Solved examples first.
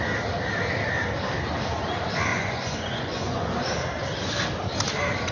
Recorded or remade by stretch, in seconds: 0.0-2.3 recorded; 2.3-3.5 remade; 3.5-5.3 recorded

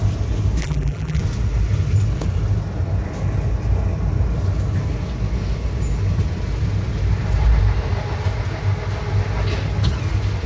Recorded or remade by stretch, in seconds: 0.0-0.6 recorded; 0.6-1.2 remade; 1.2-10.5 recorded

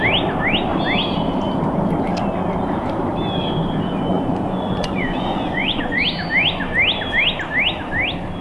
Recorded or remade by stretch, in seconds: 0.0-4.1 recorded; 4.1-6.0 remade; 6.0-8.4 recorded

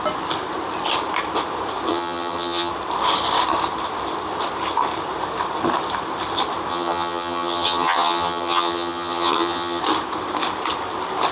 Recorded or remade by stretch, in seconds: 0.0-1.9 recorded; 1.9-2.7 remade; 2.7-6.7 recorded; 6.7-9.8 remade; 9.8-11.3 recorded

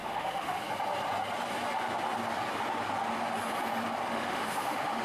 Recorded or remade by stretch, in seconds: 0.0-0.6 remade; 0.6-4.1 recorded; 4.1-5.0 remade

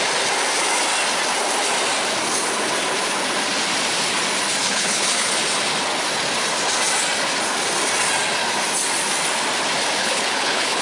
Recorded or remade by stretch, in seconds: 0.0-4.6 recorded; 4.6-5.3 remade; 5.3-10.0 recorded; 10.0-10.8 remade

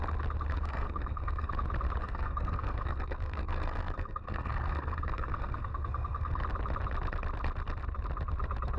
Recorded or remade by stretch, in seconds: 0.0-0.5 recorded; 0.5-1.5 remade; 1.5-2.0 recorded; 2.0-6.4 remade; 6.4-8.8 recorded